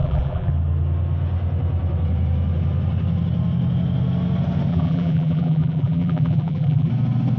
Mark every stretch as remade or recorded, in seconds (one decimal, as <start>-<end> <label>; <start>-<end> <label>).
0.0-0.5 remade; 0.5-4.7 recorded; 4.7-6.9 remade; 6.9-7.4 recorded